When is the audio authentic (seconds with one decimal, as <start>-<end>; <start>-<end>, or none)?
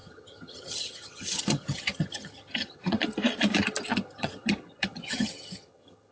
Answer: 3.0-3.9